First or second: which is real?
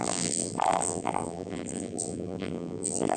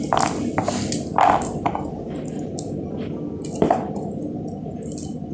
second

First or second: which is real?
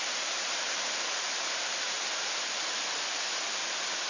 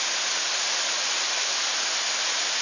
second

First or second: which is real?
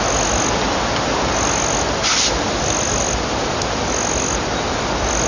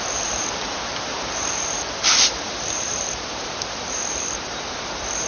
first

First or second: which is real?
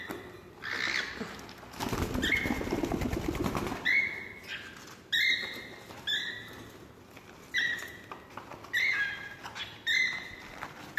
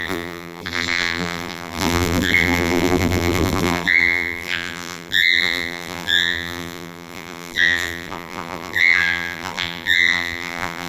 first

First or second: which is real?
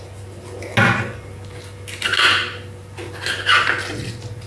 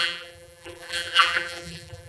first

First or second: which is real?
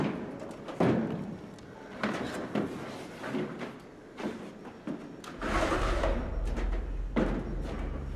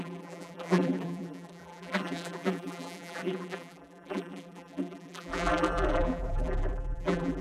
first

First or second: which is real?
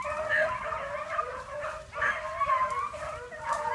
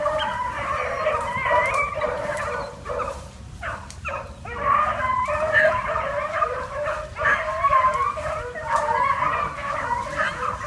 first